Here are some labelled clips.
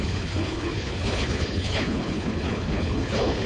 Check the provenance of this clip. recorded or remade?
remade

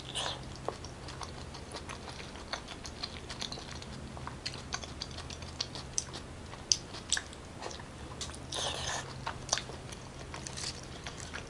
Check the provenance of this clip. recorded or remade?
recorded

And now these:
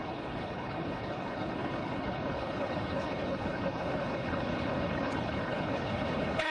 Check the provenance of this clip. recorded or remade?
remade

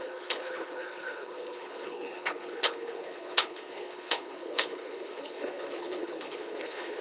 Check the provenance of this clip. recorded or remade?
remade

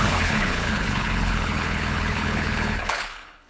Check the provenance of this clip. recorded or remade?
remade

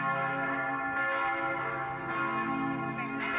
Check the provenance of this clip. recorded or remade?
recorded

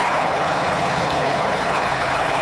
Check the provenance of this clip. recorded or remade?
remade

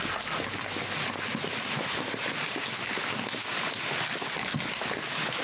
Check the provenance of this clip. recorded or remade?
recorded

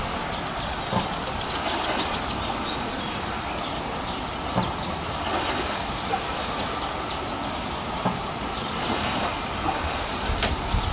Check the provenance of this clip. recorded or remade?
recorded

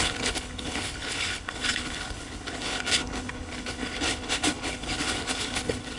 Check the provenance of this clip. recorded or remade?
remade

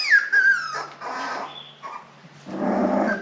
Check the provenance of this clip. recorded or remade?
recorded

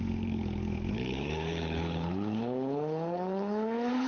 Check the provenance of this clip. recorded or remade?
remade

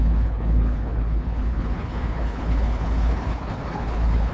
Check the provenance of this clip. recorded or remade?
remade